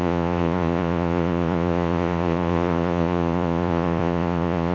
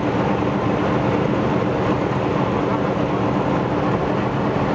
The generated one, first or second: first